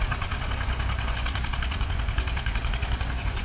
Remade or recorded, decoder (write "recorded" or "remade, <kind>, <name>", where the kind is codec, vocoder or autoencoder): remade, vocoder, Vocos